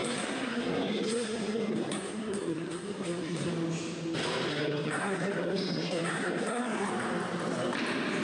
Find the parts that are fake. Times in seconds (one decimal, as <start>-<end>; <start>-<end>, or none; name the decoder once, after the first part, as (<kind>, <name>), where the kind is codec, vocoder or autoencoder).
0.0-3.5 (codec, SNAC); 4.5-6.9